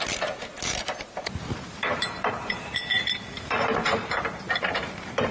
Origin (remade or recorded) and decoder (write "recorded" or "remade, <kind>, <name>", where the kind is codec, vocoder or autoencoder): remade, vocoder, BigVGAN v2